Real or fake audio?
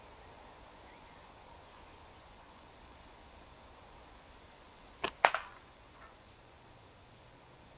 fake